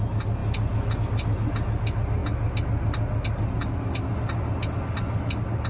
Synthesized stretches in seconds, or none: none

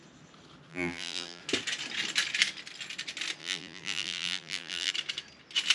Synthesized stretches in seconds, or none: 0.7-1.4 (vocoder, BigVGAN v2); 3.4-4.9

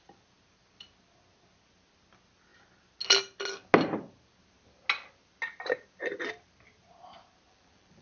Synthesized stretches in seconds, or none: none

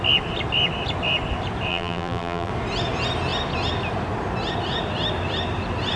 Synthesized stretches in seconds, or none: 1.7-2.5 (vocoder, BigVGAN v2)

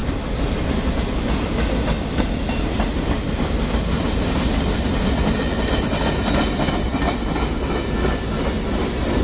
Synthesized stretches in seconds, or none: none

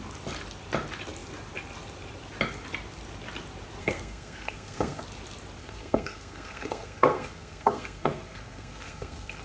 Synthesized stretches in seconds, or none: 3.8-5.0 (codec, SNAC); 5.6-9.4

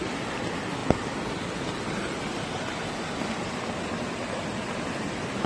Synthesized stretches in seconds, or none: none